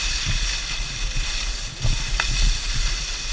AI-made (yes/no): no